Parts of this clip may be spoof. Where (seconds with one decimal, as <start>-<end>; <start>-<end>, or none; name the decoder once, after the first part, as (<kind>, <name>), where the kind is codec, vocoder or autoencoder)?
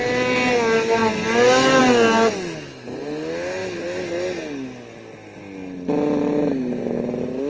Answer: none